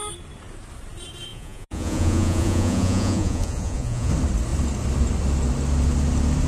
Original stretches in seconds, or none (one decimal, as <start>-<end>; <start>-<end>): 0.0-1.3; 4.1-6.5